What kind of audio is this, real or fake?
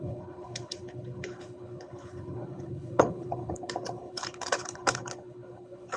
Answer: fake